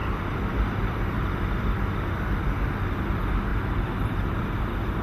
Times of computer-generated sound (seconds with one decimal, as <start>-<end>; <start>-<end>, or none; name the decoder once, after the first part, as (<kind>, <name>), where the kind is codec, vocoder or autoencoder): 0.0-1.7 (vocoder, BigVGAN v2); 3.5-4.6